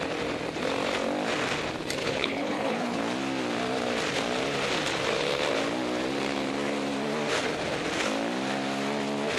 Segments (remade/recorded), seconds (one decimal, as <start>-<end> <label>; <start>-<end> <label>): 0.0-2.0 recorded; 2.0-3.0 remade; 3.0-9.4 recorded